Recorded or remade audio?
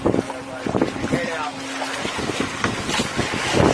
recorded